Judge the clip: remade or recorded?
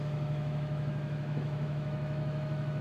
remade